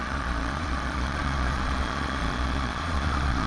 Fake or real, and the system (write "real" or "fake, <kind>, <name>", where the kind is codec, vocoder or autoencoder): fake, vocoder, Vocos